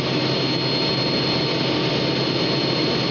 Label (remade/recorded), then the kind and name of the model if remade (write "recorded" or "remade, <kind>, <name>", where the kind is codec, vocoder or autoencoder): recorded